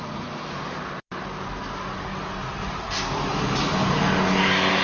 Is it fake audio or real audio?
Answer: real